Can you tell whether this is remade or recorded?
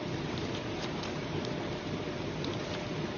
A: remade